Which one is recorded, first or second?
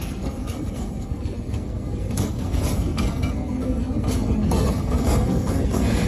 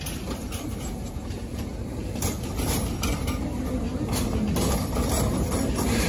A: second